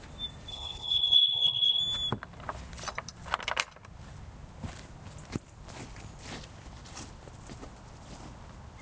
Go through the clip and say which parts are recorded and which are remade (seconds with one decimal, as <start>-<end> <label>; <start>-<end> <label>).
0.0-0.5 recorded; 0.5-1.8 remade; 1.8-8.8 recorded